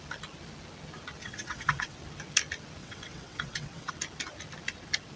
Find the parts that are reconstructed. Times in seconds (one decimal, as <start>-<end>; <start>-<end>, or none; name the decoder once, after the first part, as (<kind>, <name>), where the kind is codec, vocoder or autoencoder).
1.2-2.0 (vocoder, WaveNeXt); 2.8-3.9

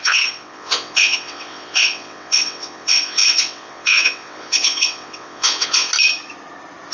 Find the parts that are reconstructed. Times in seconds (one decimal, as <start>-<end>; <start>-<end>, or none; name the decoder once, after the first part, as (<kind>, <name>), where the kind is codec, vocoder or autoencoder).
0.0-5.9 (vocoder, WaveNeXt)

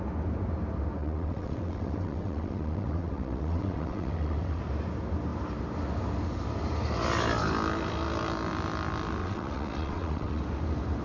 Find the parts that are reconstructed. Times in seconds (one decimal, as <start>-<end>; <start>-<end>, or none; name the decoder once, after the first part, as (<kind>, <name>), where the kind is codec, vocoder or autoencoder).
1.0-4.6 (vocoder, WaveNeXt); 9.2-10.4

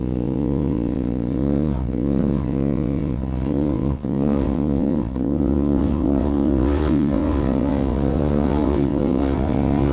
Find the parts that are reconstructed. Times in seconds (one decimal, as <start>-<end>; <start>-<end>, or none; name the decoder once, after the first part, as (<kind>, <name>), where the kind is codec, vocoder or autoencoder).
0.0-9.9 (vocoder, WaveNeXt)